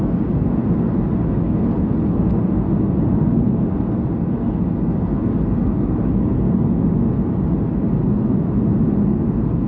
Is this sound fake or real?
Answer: real